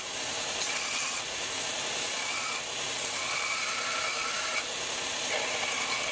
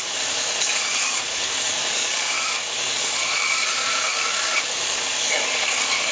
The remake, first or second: second